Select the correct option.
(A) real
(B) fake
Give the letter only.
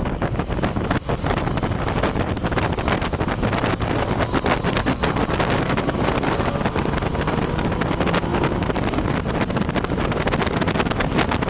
A